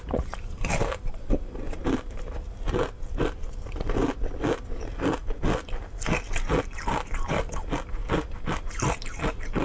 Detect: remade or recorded recorded